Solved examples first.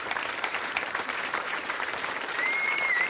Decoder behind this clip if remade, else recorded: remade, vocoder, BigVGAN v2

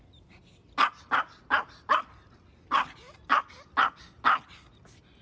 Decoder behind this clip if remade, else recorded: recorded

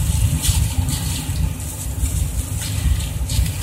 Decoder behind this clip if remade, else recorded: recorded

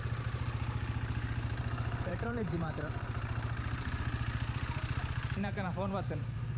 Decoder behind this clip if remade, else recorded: remade, vocoder, BigVGAN v2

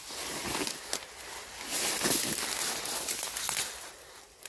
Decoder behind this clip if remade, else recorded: recorded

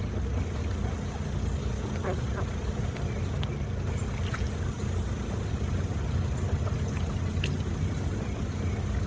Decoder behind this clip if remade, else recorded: recorded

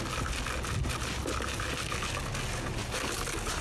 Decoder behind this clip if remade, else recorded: recorded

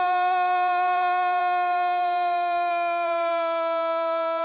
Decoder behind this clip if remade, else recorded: remade, vocoder, BigVGAN v2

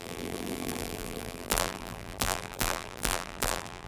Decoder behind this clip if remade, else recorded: remade, vocoder, BigVGAN v2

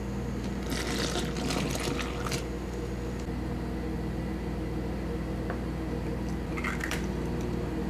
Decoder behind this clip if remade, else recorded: remade, vocoder, BigVGAN v2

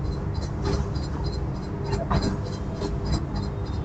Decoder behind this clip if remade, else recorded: recorded